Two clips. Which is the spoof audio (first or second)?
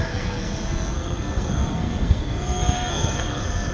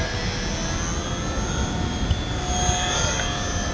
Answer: first